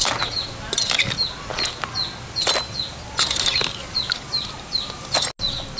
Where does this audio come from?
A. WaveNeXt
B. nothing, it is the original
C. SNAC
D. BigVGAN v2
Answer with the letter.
B